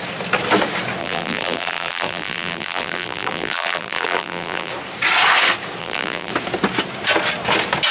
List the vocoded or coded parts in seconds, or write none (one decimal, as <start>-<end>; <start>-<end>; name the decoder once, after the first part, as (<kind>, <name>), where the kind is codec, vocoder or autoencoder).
1.0-4.7 (vocoder, BigVGAN v2); 5.8-6.3